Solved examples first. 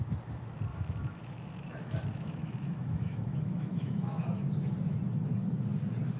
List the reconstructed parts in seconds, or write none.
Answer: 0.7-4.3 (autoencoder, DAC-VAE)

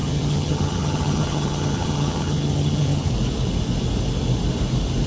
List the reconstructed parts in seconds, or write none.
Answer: 0.0-3.1 (vocoder, HiFi-GAN)